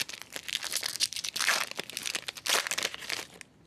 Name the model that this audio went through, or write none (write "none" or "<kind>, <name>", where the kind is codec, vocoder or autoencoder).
none